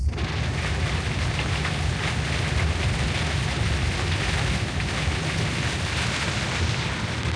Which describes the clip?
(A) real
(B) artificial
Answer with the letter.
A